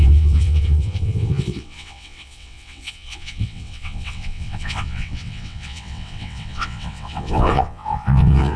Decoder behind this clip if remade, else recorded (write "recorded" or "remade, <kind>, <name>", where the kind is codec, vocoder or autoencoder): remade, vocoder, WaveNeXt